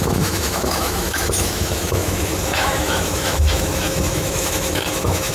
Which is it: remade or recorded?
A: remade